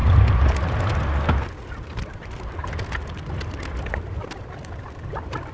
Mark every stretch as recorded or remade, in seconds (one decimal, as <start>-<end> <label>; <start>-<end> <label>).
0.0-5.5 recorded